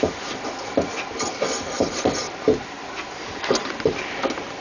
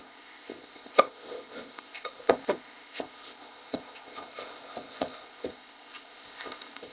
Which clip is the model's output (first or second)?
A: second